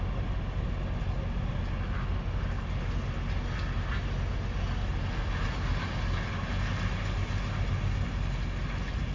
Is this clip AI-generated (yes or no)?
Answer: no